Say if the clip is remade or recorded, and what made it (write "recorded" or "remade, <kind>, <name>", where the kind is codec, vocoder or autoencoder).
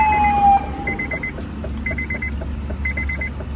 recorded